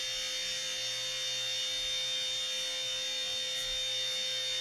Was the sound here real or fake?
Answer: real